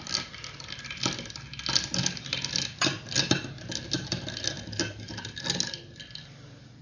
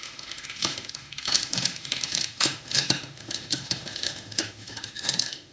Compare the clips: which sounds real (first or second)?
first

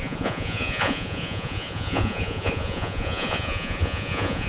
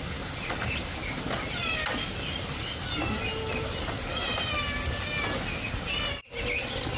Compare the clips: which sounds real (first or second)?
second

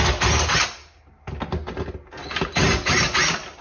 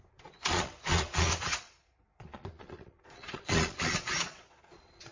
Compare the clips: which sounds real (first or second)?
first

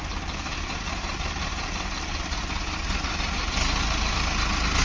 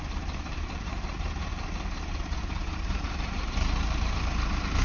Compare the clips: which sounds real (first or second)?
first